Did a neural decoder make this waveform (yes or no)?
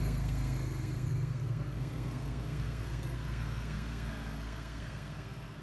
yes